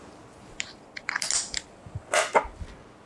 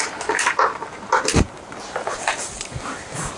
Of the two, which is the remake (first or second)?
second